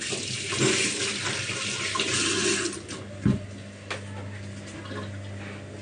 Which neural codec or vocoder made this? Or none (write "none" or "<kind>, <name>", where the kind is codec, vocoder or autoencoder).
none